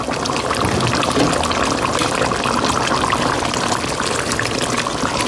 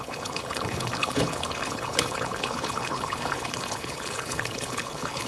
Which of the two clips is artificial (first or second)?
second